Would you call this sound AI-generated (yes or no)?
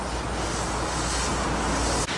no